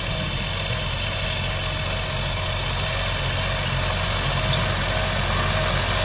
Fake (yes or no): no